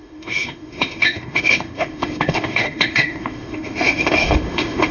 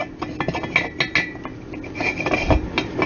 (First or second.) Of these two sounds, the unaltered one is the second